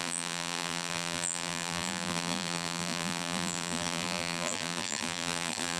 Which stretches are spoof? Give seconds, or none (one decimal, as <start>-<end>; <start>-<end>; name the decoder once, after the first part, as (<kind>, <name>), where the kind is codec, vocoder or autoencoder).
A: 0.0-5.8 (vocoder, BigVGAN v2)